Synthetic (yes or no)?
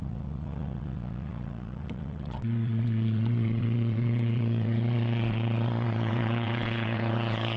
yes